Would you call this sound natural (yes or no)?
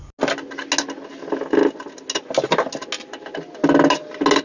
yes